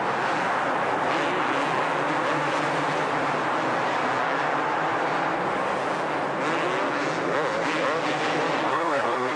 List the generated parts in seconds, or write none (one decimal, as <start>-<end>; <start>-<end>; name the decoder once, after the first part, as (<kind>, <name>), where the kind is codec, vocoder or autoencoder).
8.7-9.4 (codec, SNAC)